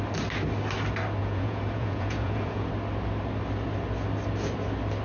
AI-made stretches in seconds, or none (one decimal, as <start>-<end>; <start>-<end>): 1.2-2.7